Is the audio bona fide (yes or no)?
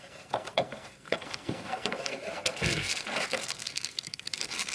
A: no